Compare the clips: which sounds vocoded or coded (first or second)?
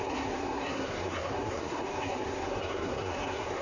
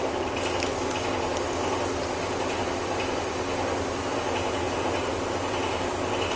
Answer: first